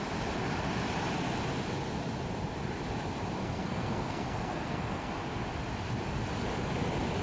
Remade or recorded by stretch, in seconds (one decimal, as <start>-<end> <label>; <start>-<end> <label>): 0.0-3.4 recorded; 3.4-5.1 remade; 5.1-7.2 recorded